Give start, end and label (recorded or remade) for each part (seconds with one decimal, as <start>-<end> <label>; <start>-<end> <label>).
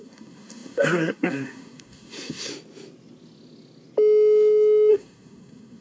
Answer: 0.0-2.5 remade; 2.5-4.9 recorded; 4.9-5.8 remade